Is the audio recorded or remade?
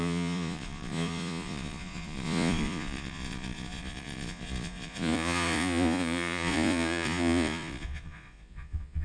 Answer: remade